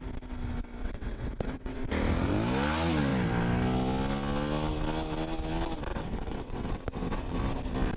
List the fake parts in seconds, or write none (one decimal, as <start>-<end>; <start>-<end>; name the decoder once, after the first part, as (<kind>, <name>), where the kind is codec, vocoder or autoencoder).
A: 0.8-1.8 (vocoder, WaveNeXt); 5.9-7.4